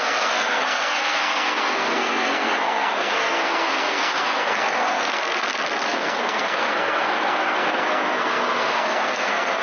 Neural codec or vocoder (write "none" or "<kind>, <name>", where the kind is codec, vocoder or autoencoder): codec, SNAC